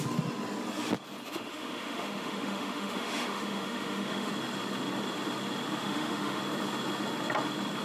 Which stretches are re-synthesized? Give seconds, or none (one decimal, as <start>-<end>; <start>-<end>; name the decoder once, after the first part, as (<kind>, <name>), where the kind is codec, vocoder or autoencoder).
1.3-4.3 (autoencoder, DAC-VAE); 5.8-6.4